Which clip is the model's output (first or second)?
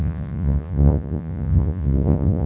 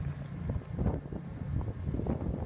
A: first